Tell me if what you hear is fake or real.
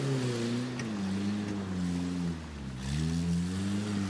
real